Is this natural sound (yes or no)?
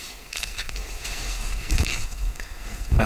no